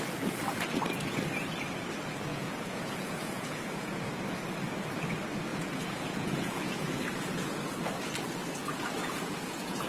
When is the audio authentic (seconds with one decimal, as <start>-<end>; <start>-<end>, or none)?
0.0-2.3; 4.1-5.5; 7.9-9.0